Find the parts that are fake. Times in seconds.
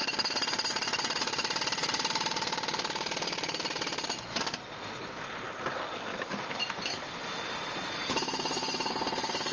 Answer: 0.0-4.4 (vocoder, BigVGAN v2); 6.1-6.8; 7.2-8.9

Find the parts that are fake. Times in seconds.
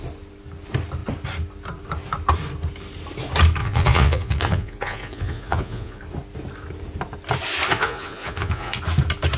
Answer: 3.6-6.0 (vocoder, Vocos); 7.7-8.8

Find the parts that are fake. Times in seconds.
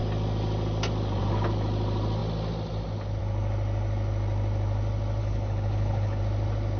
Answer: 5.2-6.2 (codec, HILCodec)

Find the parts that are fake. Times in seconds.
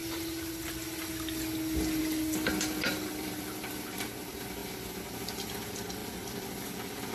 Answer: 2.9-3.8 (vocoder, BigVGAN v2); 6.0-7.1